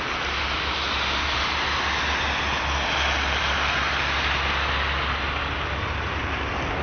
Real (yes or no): yes